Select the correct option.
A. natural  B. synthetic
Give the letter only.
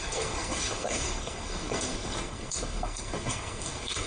B